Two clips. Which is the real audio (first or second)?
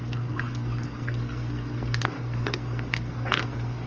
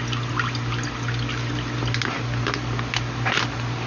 second